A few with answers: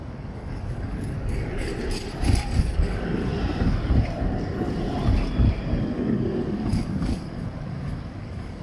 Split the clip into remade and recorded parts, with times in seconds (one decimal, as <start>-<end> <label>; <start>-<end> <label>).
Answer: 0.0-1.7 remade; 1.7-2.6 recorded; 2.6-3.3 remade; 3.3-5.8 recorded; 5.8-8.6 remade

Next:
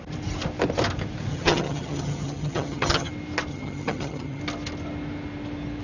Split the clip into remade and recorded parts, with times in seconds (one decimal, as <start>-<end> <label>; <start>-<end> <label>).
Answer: 0.0-1.3 recorded; 1.3-3.1 remade; 3.1-3.5 recorded; 3.5-4.4 remade; 4.4-5.8 recorded

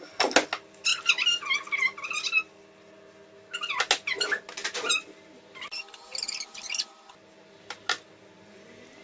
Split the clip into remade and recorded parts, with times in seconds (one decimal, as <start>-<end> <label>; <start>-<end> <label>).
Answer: 0.0-9.0 recorded

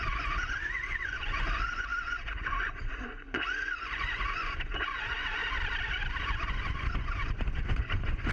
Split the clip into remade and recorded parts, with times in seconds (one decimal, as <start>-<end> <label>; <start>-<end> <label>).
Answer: 0.0-5.4 remade; 5.4-6.2 recorded; 6.2-8.3 remade

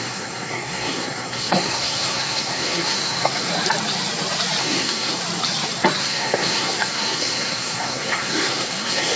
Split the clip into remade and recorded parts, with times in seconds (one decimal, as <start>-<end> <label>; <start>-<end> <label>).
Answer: 0.0-3.5 remade; 3.5-4.6 recorded; 4.6-5.2 remade; 5.2-6.0 recorded; 6.0-9.2 remade

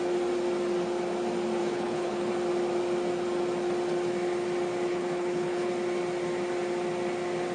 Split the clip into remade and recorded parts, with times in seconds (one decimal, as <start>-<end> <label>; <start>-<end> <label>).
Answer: 0.0-1.6 recorded; 1.6-2.3 remade; 2.3-4.9 recorded; 4.9-5.7 remade; 5.7-7.5 recorded

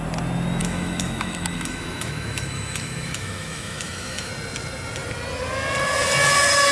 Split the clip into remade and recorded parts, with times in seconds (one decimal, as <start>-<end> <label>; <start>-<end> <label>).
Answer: 0.0-0.6 recorded; 0.6-4.3 remade; 4.3-6.7 recorded